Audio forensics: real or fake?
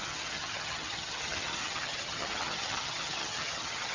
fake